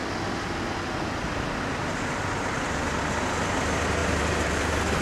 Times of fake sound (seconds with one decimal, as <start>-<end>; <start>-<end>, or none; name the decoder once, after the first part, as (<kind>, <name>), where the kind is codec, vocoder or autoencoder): 4.0-4.5 (vocoder, BigVGAN v2)